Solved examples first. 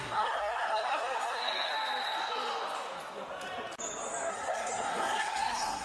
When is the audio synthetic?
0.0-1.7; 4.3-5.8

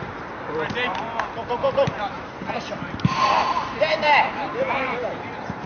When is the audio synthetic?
0.0-5.7

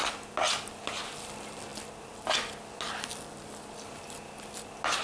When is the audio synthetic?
none

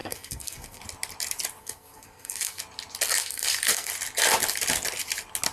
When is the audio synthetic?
0.0-0.8; 1.6-2.6; 3.2-3.9

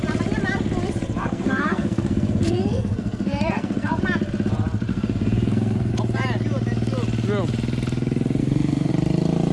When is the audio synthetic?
1.2-4.0; 4.9-5.9; 8.4-8.9

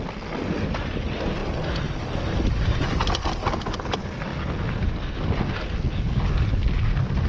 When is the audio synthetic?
none

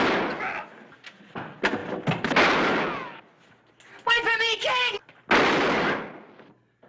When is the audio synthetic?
none